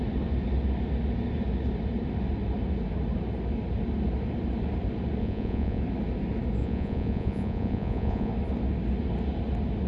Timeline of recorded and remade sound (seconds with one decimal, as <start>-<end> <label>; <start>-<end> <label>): 0.0-5.2 recorded; 5.2-5.8 remade; 5.8-6.6 recorded; 6.6-8.3 remade; 8.3-9.9 recorded